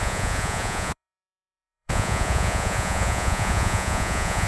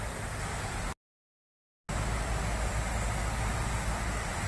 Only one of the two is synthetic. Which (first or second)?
first